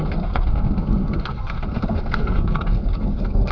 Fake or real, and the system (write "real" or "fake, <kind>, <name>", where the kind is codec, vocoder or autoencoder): fake, codec, SNAC